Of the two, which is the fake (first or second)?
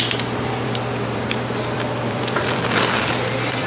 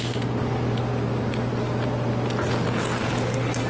first